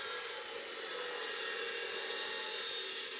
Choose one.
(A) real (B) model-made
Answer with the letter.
A